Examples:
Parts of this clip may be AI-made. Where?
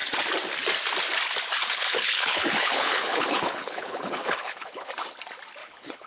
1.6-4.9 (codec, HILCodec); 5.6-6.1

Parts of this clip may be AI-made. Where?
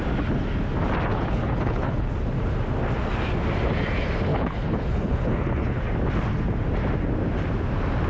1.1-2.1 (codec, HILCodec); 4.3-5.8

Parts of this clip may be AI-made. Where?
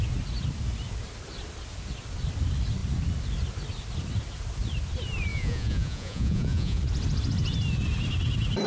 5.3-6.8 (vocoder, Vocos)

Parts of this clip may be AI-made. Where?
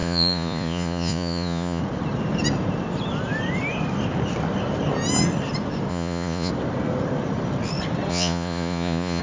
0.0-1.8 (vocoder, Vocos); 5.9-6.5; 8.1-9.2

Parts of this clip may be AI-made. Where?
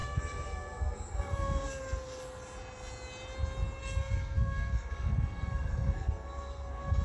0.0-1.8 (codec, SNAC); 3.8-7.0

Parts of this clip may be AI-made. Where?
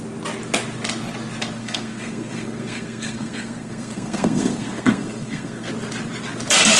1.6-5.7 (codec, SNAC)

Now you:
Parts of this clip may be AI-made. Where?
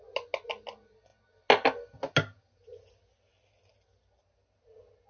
none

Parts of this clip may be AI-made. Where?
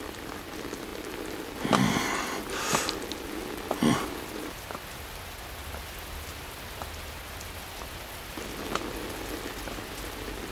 none